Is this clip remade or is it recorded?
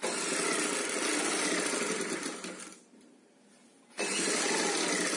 recorded